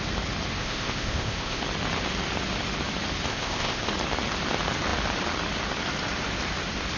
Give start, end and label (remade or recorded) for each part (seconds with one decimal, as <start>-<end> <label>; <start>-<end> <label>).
0.0-0.6 recorded; 0.6-1.6 remade; 1.6-3.3 recorded; 3.3-3.9 remade; 3.9-7.0 recorded